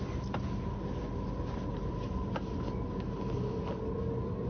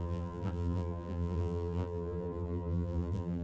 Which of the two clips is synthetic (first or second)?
second